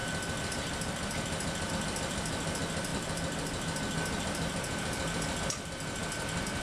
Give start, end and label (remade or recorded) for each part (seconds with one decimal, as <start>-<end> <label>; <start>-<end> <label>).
0.0-6.6 recorded